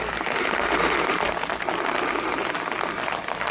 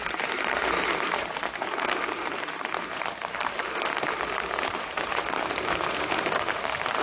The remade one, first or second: second